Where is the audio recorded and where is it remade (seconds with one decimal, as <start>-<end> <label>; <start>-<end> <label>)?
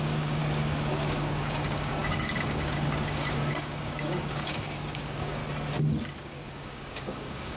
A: 0.0-0.4 remade; 0.4-0.9 recorded; 0.9-5.4 remade; 5.4-6.2 recorded; 6.2-7.6 remade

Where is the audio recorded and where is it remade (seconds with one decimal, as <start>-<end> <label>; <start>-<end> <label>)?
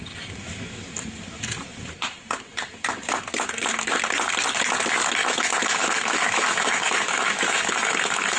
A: 0.0-5.2 recorded; 5.2-8.4 remade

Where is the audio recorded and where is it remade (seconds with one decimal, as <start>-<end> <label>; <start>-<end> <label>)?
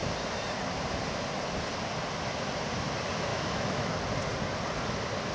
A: 0.0-3.3 recorded; 3.3-3.9 remade; 3.9-5.3 recorded